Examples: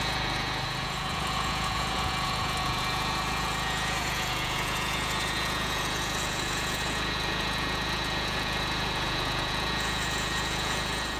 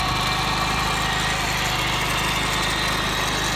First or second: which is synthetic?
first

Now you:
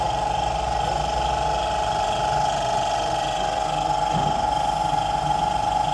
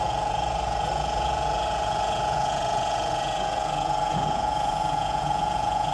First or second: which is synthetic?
second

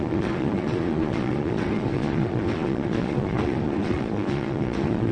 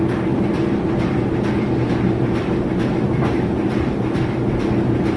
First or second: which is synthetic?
first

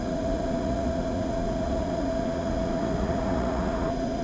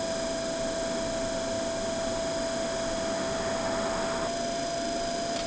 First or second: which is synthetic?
first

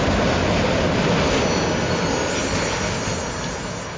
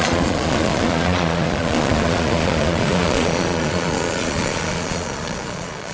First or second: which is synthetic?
second